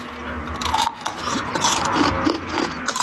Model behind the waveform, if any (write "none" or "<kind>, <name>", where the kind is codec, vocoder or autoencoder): none